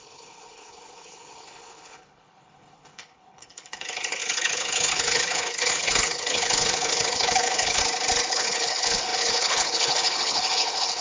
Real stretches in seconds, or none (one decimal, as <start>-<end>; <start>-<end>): 7.8-8.3